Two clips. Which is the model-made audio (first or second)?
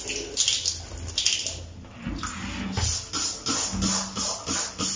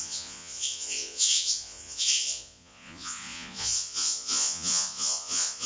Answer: second